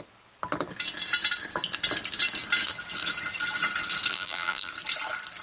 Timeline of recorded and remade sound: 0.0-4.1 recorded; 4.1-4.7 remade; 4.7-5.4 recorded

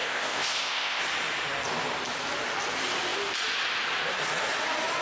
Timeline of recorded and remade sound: 0.0-1.0 remade; 1.0-5.0 recorded

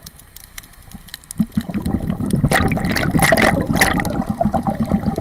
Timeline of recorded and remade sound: 0.0-1.1 remade; 1.1-4.2 recorded; 4.2-5.2 remade